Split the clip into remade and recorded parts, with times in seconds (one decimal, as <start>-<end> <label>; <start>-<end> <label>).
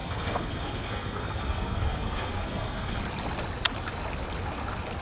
0.0-3.0 remade; 3.0-5.0 recorded